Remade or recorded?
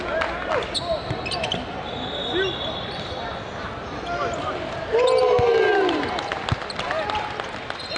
recorded